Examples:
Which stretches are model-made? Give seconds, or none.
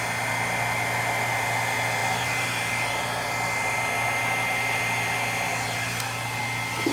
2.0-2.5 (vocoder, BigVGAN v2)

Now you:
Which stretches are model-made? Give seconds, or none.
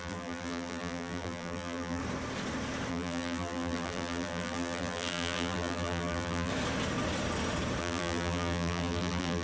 0.0-2.0 (vocoder, BigVGAN v2); 2.9-6.5; 7.8-9.4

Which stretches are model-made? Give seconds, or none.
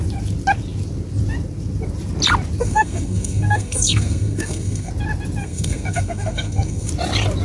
2.6-4.9 (codec, SNAC); 5.4-6.9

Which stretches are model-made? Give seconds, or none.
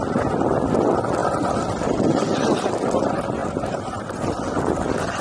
3.4-4.2 (vocoder, BigVGAN v2)